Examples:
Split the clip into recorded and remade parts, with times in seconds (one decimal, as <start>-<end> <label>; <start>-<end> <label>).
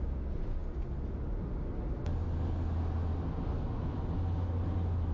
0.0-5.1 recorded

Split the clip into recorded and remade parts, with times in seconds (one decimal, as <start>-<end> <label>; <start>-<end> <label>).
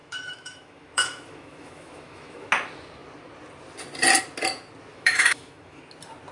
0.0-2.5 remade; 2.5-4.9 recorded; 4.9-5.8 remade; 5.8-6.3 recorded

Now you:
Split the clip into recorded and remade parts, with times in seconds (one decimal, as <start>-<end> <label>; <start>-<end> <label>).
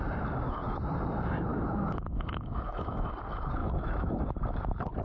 0.0-1.5 recorded; 1.5-3.1 remade; 3.1-3.6 recorded; 3.6-4.2 remade; 4.2-5.0 recorded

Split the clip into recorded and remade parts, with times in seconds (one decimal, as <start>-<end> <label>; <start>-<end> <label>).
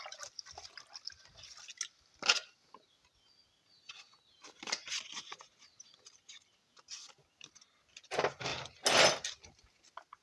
0.0-10.2 recorded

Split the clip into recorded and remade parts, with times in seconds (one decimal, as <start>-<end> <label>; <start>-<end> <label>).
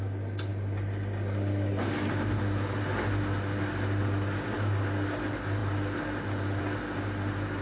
0.0-7.6 recorded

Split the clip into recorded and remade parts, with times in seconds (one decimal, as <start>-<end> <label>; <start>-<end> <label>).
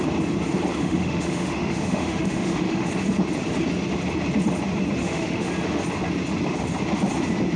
0.0-0.8 recorded; 0.8-2.9 remade; 2.9-5.0 recorded; 5.0-5.5 remade; 5.5-7.6 recorded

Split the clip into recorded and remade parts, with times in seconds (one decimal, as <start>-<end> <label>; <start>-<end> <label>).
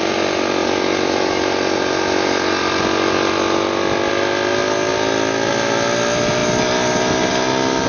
0.0-7.9 recorded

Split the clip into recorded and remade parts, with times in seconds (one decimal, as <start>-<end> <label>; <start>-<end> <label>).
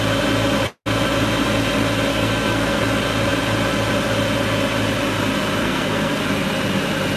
0.0-2.1 recorded; 2.1-2.8 remade; 2.8-5.6 recorded; 5.6-6.2 remade; 6.2-7.2 recorded